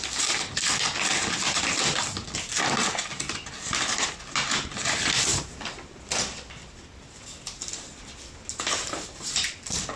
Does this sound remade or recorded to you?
recorded